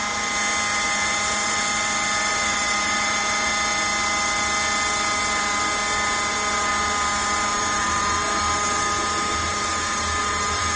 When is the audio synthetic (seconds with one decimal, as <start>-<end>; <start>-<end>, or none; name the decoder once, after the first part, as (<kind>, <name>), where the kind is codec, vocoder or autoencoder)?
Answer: 0.7-3.5 (vocoder, BigVGAN v2); 7.5-10.8